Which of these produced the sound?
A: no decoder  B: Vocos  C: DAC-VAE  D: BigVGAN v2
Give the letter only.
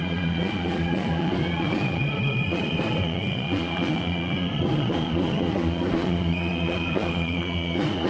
B